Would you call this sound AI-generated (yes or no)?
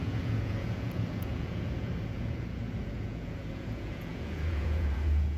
yes